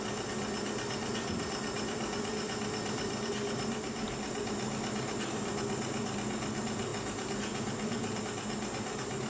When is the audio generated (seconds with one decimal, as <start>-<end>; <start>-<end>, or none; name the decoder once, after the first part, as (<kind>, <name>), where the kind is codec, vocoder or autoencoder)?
none